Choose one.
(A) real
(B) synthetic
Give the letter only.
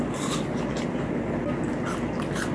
A